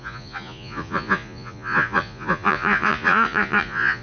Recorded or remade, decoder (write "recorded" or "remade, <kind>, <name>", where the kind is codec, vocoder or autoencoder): remade, vocoder, Vocos